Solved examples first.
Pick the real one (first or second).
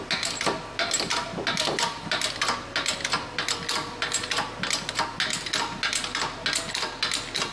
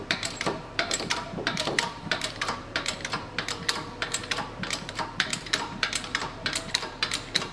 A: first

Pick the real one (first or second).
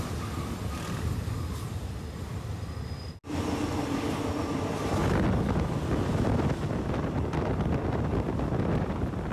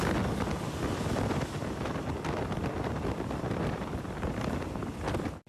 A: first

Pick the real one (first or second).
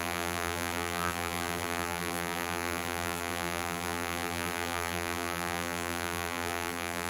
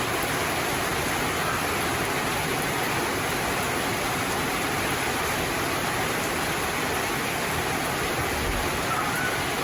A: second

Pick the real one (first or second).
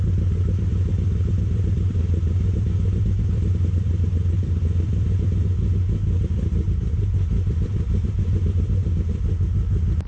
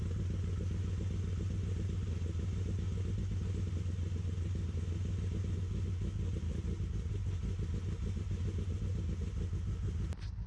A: second